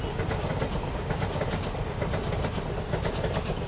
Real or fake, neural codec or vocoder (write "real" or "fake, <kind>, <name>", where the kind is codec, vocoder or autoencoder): real